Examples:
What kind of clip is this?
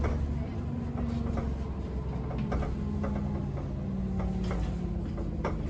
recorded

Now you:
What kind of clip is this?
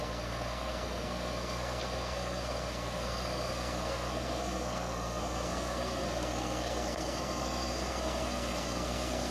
remade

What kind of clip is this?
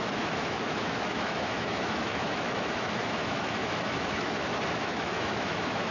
remade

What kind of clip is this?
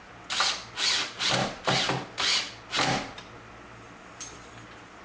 recorded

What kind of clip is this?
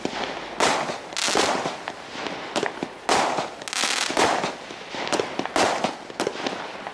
recorded